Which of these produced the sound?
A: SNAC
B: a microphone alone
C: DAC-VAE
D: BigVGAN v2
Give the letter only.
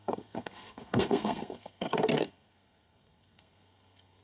A